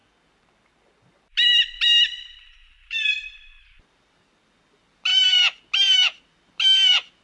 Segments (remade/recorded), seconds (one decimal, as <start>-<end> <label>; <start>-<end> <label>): 0.0-5.1 remade; 5.1-5.9 recorded; 5.9-7.2 remade